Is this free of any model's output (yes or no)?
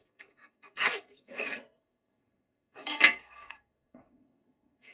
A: no